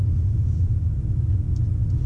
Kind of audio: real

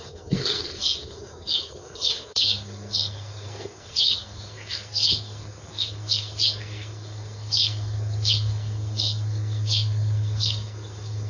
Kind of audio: fake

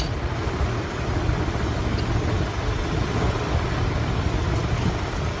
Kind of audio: real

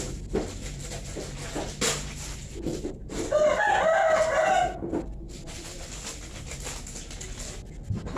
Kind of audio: real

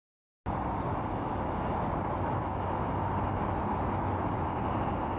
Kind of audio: real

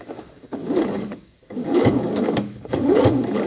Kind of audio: fake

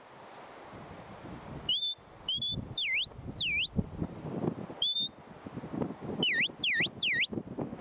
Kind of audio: real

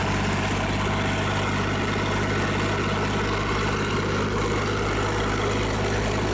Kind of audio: real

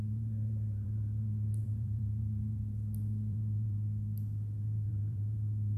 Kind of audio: fake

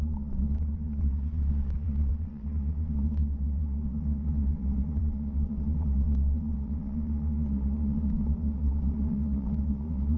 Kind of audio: fake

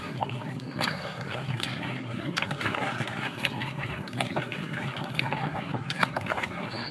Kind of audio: fake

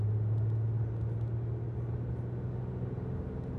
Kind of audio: real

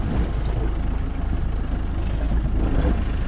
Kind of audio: real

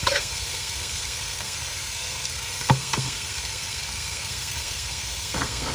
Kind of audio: fake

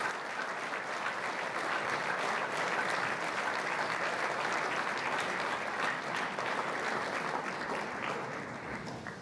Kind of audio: real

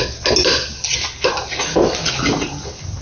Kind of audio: real